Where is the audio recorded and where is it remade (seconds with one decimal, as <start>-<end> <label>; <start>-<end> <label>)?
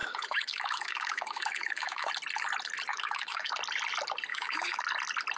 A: 0.0-2.1 remade; 2.1-2.9 recorded; 2.9-3.5 remade; 3.5-4.3 recorded; 4.3-4.8 remade; 4.8-5.4 recorded